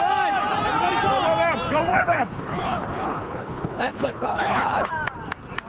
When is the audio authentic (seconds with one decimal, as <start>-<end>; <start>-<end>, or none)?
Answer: 0.0-1.9; 4.9-5.7